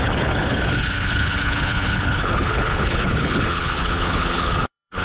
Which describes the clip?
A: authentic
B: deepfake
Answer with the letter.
B